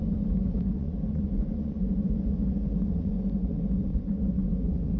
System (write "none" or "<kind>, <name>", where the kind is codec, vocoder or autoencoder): vocoder, Vocos